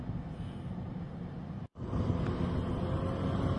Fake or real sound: real